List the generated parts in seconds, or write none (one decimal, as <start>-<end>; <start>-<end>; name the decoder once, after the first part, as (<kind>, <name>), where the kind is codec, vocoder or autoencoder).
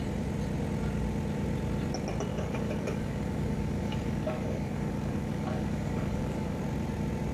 2.3-6.6 (codec, DAC)